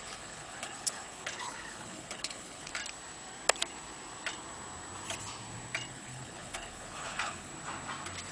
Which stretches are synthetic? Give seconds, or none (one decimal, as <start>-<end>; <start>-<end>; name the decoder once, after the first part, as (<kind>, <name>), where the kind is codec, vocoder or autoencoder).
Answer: 0.0-2.8 (codec, HILCodec); 5.9-7.5